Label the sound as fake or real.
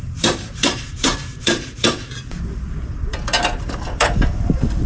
fake